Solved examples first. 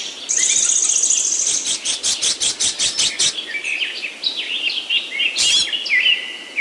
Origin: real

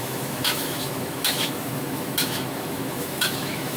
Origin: fake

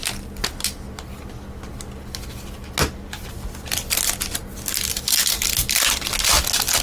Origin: real